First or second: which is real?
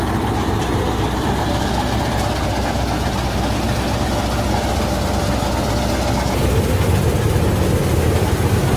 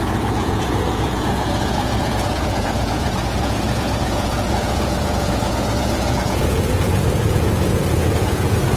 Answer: first